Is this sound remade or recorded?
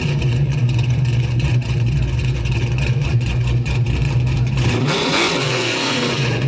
remade